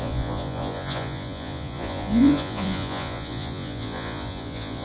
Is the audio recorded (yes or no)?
no